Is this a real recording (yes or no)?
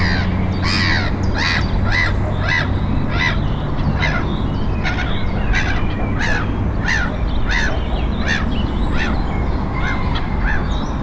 yes